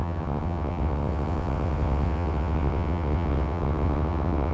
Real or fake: fake